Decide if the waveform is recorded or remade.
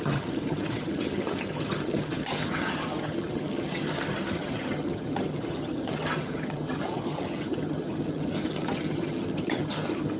remade